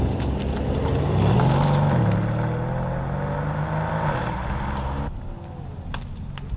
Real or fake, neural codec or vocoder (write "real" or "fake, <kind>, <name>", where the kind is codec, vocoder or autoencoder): real